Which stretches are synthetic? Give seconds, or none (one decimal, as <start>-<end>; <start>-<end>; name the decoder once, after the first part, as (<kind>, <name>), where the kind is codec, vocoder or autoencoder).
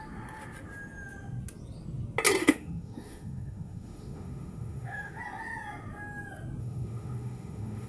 2.4-5.2 (autoencoder, DAC-VAE); 6.6-7.9